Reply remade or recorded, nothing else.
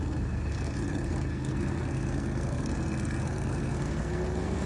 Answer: remade